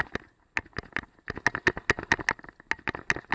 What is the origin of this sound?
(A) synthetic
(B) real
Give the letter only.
B